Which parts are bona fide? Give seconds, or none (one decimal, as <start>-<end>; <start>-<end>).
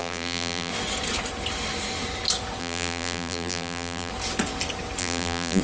0.7-2.6; 4.1-5.0